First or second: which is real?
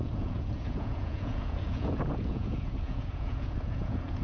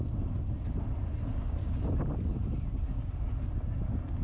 second